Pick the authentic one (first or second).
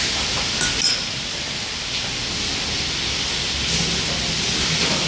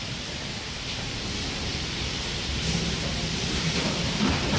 first